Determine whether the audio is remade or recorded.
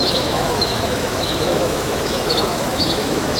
remade